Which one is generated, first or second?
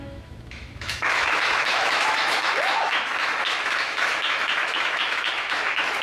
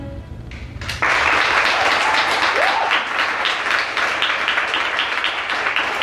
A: first